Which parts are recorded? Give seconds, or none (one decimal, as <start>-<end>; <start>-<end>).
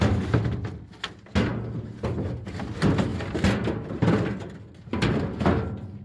0.0-6.0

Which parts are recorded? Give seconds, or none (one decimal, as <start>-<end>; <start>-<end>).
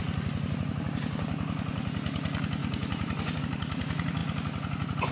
0.0-2.6; 3.4-5.1